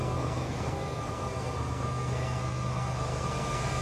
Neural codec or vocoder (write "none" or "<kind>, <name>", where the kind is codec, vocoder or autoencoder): codec, SNAC